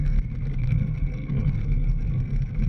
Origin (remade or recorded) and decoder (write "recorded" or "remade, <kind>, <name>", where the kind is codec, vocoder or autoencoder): remade, codec, SNAC